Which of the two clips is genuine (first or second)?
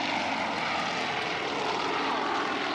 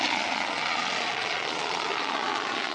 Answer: first